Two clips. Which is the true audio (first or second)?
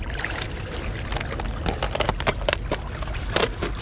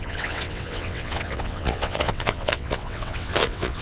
first